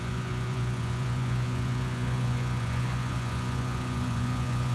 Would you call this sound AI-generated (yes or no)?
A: yes